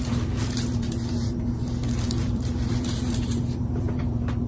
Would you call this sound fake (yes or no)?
yes